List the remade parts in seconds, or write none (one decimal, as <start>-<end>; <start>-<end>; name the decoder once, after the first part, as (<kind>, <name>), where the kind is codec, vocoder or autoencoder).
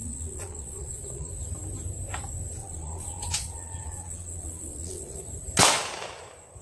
0.0-1.3 (vocoder, Vocos); 2.6-5.2